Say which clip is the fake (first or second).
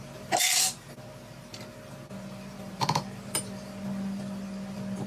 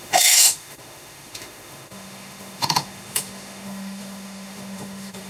second